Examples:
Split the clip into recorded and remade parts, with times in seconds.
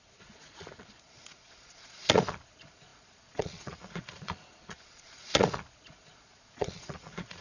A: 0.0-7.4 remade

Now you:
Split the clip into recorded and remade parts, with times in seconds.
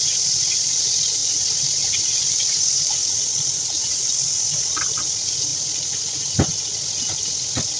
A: 0.0-7.8 recorded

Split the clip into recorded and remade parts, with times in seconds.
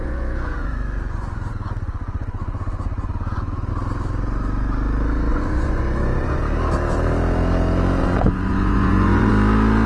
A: 0.0-3.7 remade; 3.7-5.3 recorded; 5.3-6.4 remade; 6.4-8.0 recorded; 8.0-9.3 remade; 9.3-9.9 recorded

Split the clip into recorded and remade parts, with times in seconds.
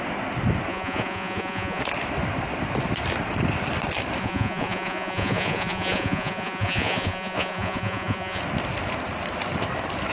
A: 0.0-0.7 recorded; 0.7-1.8 remade; 1.8-4.2 recorded; 4.2-8.4 remade; 8.4-10.1 recorded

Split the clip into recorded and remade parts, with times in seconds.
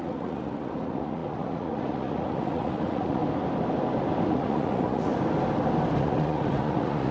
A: 0.0-3.2 remade; 3.2-4.3 recorded; 4.3-5.1 remade; 5.1-6.0 recorded; 6.0-7.1 remade